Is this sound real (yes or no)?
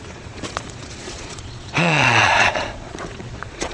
no